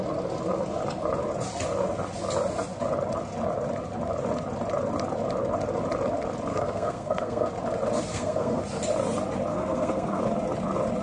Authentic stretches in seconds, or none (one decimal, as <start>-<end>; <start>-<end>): 0.0-6.5; 7.5-8.1; 8.6-9.5; 10.2-11.0